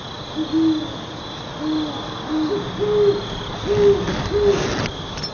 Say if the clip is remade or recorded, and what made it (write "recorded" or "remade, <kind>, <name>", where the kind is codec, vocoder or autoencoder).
recorded